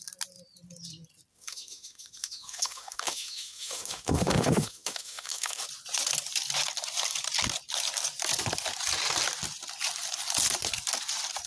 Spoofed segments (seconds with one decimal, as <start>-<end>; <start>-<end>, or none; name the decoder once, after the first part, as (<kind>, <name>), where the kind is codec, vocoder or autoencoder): 1.3-5.6 (autoencoder, DAC-VAE)

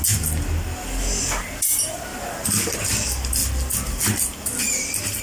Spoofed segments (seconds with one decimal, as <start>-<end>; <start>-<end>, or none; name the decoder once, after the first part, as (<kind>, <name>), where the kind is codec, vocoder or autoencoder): none

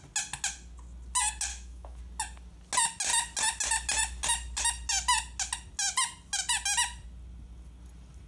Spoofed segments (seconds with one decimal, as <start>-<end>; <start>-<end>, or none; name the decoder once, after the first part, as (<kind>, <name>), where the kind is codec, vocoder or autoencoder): 1.5-2.0 (autoencoder, DAC-VAE)

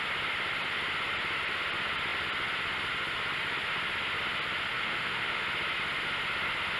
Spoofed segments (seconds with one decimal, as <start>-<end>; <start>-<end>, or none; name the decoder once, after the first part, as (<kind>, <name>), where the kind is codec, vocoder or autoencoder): 4.7-5.4 (autoencoder, DAC-VAE)

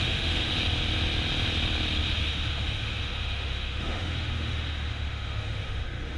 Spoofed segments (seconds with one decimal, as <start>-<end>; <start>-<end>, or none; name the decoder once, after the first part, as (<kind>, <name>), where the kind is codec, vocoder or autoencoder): 0.0-0.5 (autoencoder, DAC-VAE); 2.3-6.2

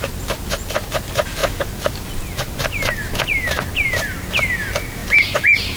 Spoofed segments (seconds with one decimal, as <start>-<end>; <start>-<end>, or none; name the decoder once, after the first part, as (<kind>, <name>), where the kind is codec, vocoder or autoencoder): none

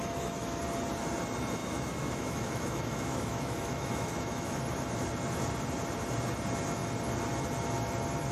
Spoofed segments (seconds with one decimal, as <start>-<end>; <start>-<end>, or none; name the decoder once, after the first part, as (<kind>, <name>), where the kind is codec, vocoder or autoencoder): 0.0-0.6 (autoencoder, DAC-VAE); 1.6-4.6

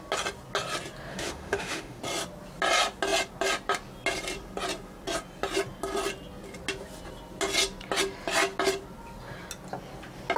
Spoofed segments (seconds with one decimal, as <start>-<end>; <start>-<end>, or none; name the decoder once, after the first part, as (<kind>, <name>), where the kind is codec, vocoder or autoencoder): 1.1-2.0 (autoencoder, DAC-VAE)